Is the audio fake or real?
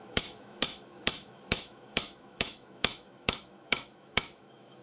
fake